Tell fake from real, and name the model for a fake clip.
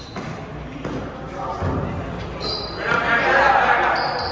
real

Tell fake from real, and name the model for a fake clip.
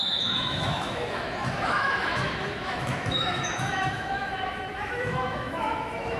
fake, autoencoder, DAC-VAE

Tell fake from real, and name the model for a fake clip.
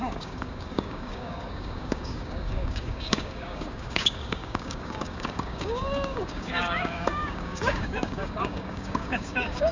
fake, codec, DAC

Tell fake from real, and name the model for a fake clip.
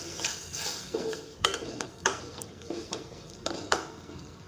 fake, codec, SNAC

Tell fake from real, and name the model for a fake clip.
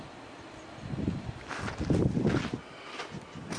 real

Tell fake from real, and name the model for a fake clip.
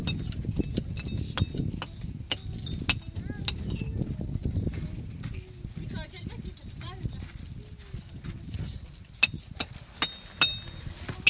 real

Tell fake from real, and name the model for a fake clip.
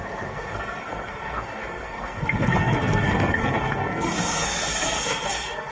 fake, codec, SNAC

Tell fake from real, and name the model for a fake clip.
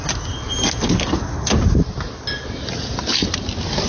real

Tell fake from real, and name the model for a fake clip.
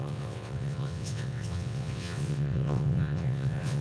fake, vocoder, WaveNeXt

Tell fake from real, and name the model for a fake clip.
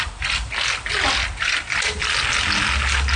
real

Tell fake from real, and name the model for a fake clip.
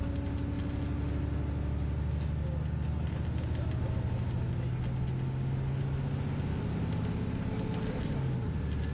real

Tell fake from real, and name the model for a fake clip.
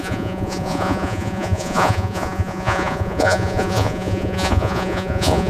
fake, vocoder, Vocos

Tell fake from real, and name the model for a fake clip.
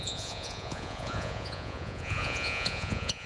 fake, vocoder, Vocos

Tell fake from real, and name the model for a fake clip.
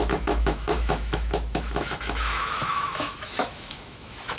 fake, autoencoder, DAC-VAE